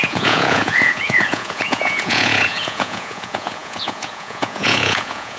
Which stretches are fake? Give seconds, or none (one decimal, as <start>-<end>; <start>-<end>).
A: 0.0-5.4